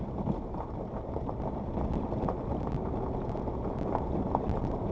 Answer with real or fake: real